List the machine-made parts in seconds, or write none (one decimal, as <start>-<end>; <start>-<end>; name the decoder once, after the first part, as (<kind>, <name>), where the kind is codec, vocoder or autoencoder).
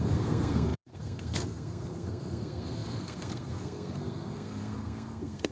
0.0-5.5 (codec, SNAC)